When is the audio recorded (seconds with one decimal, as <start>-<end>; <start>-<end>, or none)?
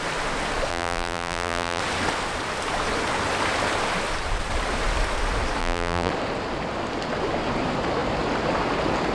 0.0-0.7; 1.8-5.6; 6.1-9.1